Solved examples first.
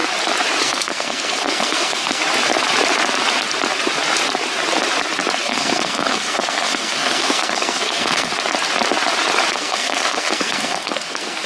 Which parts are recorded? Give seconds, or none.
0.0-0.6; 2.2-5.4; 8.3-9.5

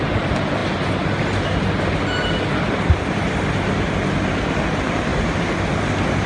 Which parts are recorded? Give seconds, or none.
0.0-6.3

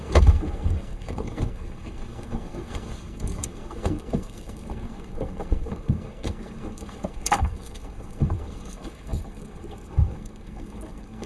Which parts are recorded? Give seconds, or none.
none

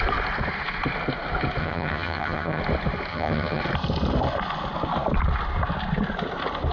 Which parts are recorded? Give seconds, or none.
0.0-1.6; 2.6-3.1; 3.6-6.7

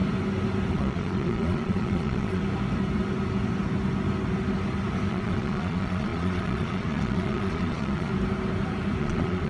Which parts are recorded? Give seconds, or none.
0.0-0.7; 2.4-5.1; 8.1-9.0

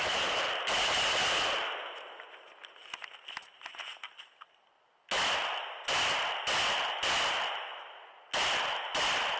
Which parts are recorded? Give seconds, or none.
0.0-9.4

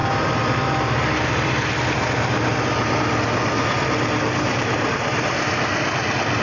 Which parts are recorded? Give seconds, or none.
1.8-6.4